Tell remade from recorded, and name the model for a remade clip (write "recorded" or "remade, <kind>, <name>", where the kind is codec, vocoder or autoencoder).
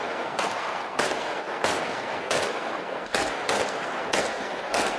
remade, codec, SNAC